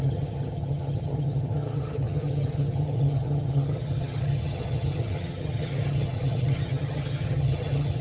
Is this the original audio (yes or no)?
no